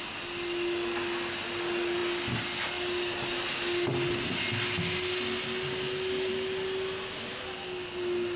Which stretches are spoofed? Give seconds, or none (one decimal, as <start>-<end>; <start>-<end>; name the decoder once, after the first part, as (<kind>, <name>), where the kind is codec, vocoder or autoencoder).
none